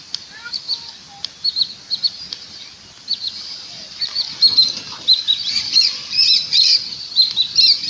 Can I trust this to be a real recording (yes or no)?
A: yes